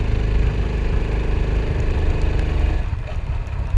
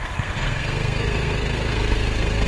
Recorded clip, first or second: first